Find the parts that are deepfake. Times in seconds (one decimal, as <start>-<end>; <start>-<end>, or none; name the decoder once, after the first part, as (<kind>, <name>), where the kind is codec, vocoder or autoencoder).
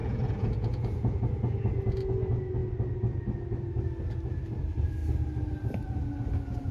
0.0-1.2 (vocoder, Vocos)